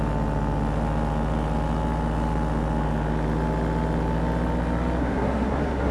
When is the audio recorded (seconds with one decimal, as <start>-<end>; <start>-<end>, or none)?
0.0-5.0